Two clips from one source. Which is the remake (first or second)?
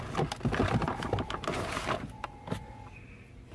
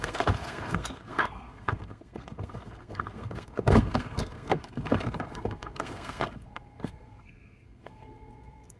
second